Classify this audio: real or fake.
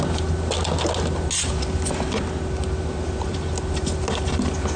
real